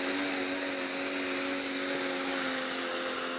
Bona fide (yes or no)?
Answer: yes